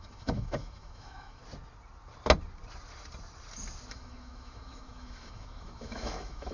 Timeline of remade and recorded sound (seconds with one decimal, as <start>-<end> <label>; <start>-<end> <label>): 0.0-1.4 remade; 1.4-3.9 recorded; 3.9-6.5 remade